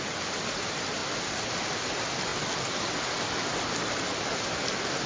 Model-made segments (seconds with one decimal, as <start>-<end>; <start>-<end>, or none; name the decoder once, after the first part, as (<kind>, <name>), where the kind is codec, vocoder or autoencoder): none